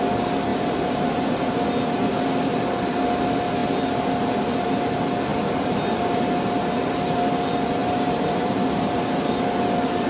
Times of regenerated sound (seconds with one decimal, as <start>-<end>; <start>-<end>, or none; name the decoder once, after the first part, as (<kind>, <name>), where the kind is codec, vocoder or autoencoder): 0.5-1.5 (vocoder, BigVGAN v2); 5.3-6.2; 7.8-9.4